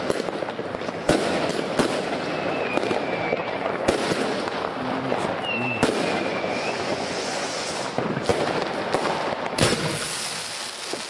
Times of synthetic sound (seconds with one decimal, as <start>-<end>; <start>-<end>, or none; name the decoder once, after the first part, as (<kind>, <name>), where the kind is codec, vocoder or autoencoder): 1.0-1.5 (vocoder, Vocos); 3.4-4.6; 6.3-7.7